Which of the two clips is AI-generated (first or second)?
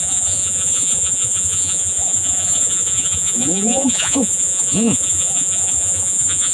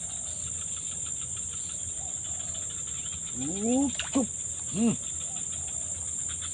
first